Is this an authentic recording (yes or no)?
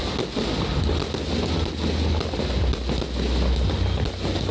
yes